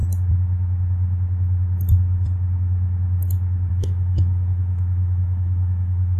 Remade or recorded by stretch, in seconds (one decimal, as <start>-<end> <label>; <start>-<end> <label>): 0.0-3.7 recorded; 3.7-6.2 remade